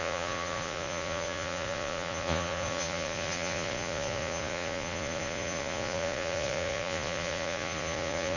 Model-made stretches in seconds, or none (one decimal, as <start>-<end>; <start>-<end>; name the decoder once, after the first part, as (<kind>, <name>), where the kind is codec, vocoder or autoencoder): 0.0-8.4 (vocoder, Vocos)